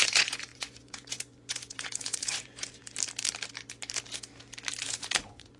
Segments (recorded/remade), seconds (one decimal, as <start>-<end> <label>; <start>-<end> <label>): 0.0-2.8 remade; 2.8-4.8 recorded; 4.8-5.6 remade